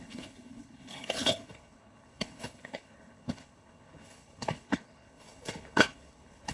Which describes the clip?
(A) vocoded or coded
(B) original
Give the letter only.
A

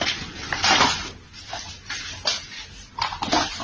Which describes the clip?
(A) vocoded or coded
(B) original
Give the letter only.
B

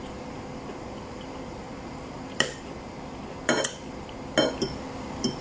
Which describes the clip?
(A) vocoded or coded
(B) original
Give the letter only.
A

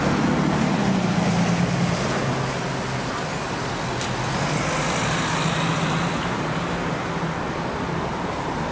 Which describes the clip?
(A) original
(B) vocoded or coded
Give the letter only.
A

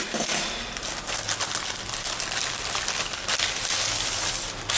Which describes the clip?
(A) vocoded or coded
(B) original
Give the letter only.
B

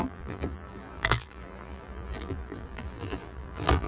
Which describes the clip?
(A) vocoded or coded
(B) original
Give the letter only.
A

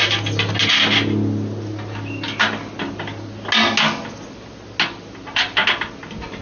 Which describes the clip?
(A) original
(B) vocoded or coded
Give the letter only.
A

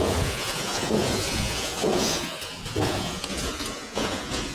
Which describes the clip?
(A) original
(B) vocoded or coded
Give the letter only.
B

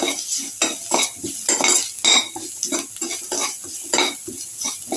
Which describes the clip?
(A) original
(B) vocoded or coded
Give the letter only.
A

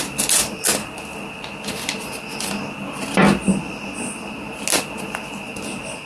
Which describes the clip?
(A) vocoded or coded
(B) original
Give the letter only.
B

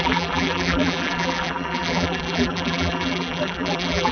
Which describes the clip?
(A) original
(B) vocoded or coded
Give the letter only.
B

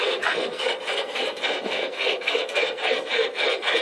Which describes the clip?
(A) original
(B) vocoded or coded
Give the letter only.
B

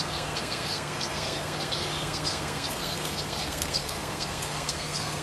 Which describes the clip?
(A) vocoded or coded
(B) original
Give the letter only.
A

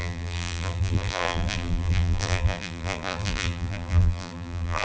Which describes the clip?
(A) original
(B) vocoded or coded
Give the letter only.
B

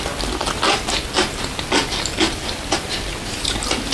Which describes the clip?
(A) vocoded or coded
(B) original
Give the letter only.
B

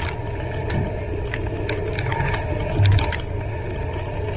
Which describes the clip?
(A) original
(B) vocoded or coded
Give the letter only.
A